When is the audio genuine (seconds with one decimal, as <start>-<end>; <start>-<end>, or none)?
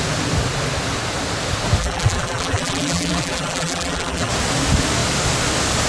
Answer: 0.0-1.8; 4.3-5.9